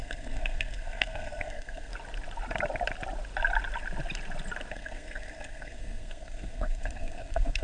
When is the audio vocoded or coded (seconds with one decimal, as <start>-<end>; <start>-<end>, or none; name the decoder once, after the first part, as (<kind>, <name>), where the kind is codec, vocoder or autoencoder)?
0.0-1.9 (codec, SNAC); 4.7-7.6